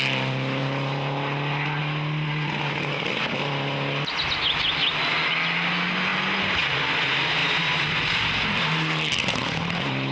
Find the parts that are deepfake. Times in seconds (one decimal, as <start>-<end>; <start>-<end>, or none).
6.1-6.8; 7.4-7.9